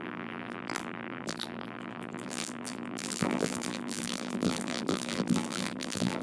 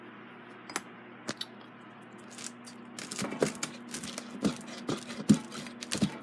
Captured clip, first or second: second